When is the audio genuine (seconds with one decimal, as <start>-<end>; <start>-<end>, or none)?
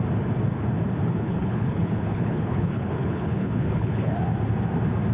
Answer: 0.0-1.0; 4.1-5.1